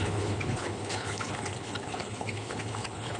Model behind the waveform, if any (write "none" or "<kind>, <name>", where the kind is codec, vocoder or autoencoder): codec, HILCodec